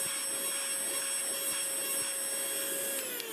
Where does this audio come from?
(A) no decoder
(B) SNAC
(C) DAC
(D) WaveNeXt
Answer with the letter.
A